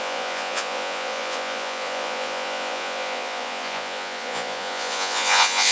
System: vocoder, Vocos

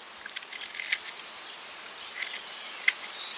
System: none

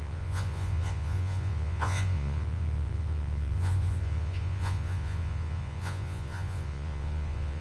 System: vocoder, Vocos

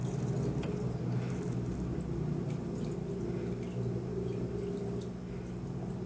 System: none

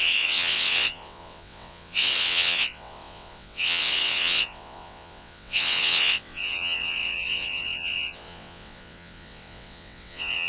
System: vocoder, WaveNeXt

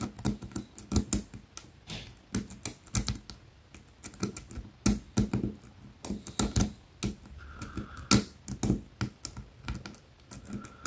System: none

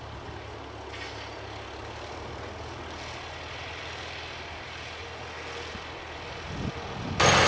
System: none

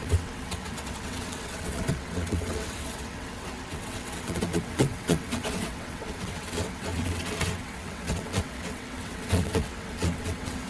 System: vocoder, WaveNeXt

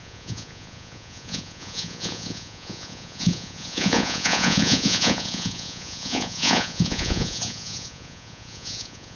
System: vocoder, Vocos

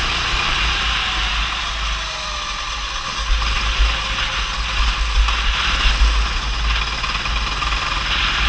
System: none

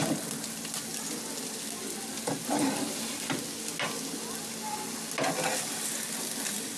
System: none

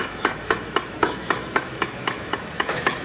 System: autoencoder, DAC-VAE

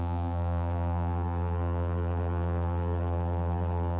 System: vocoder, BigVGAN v2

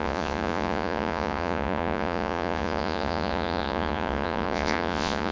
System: vocoder, Vocos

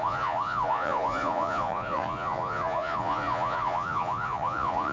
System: vocoder, Vocos